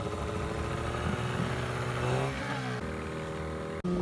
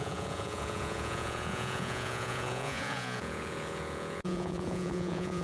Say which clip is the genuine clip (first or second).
first